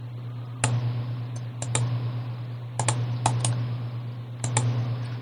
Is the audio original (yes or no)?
yes